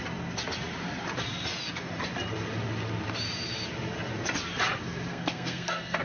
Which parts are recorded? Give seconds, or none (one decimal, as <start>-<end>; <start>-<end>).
0.0-5.1